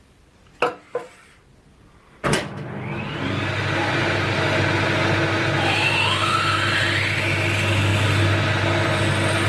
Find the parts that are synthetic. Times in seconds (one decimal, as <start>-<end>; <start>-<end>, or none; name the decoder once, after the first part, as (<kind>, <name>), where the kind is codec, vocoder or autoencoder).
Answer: none